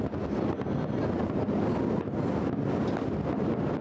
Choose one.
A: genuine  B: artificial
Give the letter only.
A